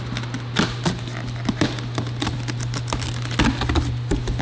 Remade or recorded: recorded